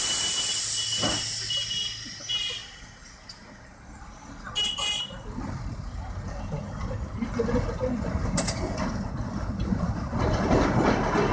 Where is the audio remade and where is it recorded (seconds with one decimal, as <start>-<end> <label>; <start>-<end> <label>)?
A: 0.0-11.3 recorded